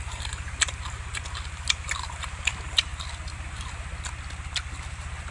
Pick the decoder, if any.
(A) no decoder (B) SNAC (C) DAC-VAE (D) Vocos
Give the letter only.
A